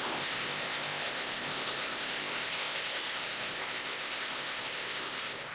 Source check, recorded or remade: remade